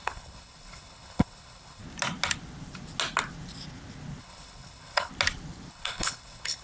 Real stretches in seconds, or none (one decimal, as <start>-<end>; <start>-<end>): 1.8-4.2; 5.1-5.7